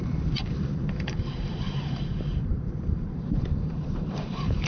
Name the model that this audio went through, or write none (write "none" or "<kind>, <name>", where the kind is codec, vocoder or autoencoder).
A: vocoder, BigVGAN v2